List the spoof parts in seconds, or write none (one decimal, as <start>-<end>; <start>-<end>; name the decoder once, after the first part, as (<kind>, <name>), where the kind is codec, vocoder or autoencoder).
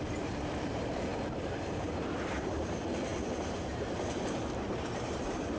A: 0.0-5.6 (vocoder, BigVGAN v2)